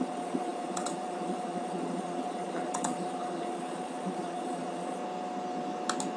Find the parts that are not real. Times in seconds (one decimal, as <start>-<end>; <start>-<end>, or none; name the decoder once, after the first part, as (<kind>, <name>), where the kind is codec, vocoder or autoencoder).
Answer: 0.0-5.0 (vocoder, Vocos)

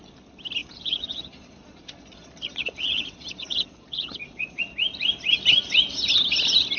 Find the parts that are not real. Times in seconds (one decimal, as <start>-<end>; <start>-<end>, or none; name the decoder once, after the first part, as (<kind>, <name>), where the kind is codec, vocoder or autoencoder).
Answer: 0.6-4.6 (vocoder, Vocos)

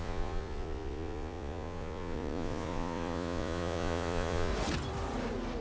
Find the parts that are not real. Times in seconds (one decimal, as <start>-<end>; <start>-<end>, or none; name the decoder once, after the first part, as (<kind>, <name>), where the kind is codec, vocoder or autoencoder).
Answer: 0.0-4.5 (vocoder, Vocos)

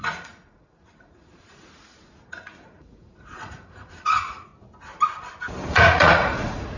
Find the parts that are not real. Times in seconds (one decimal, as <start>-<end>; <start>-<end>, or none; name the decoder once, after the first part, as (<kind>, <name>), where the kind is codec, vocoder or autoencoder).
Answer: 0.0-4.5 (vocoder, Vocos); 5.7-6.8

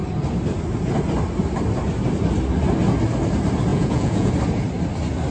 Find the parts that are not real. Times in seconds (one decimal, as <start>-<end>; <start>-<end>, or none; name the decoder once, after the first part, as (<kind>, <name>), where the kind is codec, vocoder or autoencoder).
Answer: 3.7-4.3 (vocoder, Vocos)

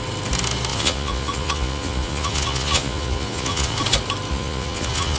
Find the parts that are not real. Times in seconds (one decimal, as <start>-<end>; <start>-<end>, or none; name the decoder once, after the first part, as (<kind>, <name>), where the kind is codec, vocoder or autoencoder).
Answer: 0.7-3.8 (vocoder, Vocos); 4.3-5.2

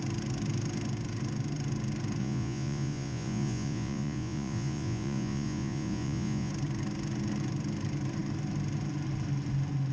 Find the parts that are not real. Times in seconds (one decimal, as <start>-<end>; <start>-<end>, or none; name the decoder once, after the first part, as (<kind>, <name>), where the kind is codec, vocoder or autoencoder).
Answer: 2.2-6.5 (vocoder, Vocos)

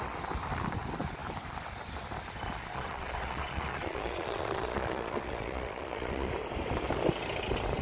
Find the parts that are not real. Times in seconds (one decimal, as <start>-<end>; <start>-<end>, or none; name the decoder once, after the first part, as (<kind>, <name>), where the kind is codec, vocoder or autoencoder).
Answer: 2.7-6.3 (vocoder, Vocos)